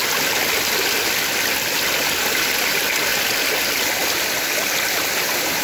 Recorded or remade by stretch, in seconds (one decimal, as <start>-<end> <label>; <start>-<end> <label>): 0.0-5.6 recorded